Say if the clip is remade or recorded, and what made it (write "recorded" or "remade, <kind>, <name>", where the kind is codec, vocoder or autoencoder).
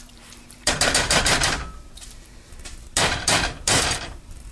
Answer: remade, vocoder, BigVGAN v2